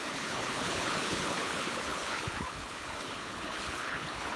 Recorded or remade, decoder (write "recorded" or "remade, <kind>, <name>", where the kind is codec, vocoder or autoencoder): remade, codec, HILCodec